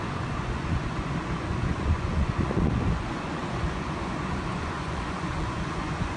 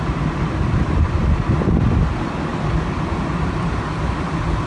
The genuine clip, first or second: second